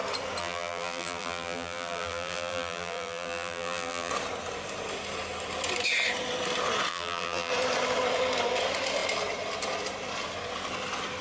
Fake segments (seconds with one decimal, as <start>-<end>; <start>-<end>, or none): 0.4-4.1; 6.9-7.5